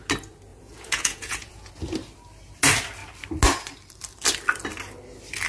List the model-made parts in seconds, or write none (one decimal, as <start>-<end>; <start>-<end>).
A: 0.5-1.7